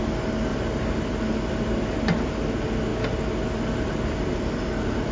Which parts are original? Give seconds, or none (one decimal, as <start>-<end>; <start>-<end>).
0.0-5.1